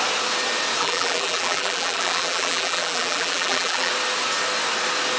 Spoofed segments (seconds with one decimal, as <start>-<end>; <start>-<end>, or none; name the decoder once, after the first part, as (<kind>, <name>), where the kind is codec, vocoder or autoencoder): 0.8-3.9 (vocoder, BigVGAN v2)